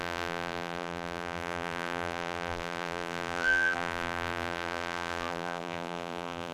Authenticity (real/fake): fake